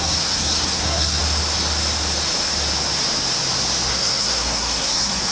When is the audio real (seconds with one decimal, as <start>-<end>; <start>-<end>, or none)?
1.2-3.9